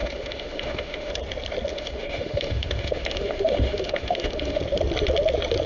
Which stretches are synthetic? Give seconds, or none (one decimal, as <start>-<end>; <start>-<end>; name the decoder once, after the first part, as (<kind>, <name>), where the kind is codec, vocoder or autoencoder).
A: 0.0-1.1 (autoencoder, DAC-VAE); 1.7-4.6